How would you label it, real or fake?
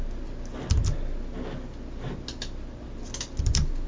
real